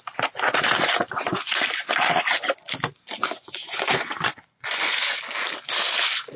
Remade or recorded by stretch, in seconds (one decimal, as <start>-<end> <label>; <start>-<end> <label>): 0.0-3.2 recorded; 3.2-5.2 remade; 5.2-6.4 recorded